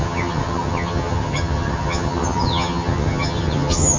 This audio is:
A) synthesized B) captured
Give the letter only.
A